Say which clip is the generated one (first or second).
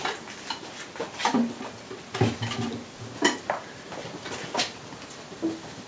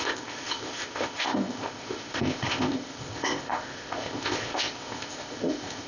second